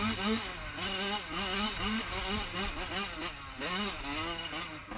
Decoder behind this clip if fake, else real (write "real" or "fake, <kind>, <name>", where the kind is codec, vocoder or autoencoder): real